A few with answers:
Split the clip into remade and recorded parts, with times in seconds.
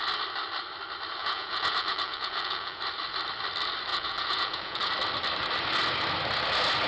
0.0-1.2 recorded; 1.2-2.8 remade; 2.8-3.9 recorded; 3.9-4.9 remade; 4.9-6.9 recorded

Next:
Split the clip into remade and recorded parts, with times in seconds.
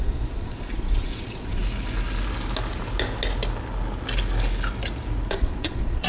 0.0-1.6 remade; 1.6-5.3 recorded; 5.3-6.1 remade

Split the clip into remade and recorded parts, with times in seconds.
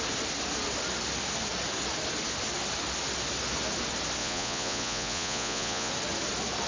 0.0-4.2 recorded; 4.2-5.9 remade; 5.9-6.7 recorded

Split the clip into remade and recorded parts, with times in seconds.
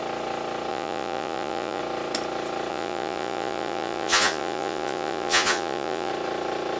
0.0-0.7 recorded; 0.7-1.8 remade; 1.8-2.7 recorded; 2.7-6.1 remade; 6.1-6.8 recorded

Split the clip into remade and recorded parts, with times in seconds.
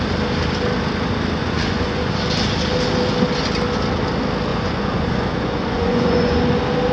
0.0-1.4 recorded; 1.4-2.1 remade; 2.1-4.5 recorded; 4.5-6.4 remade; 6.4-6.9 recorded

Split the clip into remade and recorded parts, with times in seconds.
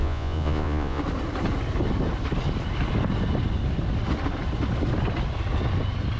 0.0-1.0 remade; 1.0-6.2 recorded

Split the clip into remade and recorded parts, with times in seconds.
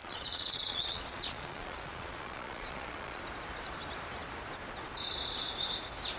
0.0-3.2 remade; 3.2-6.2 recorded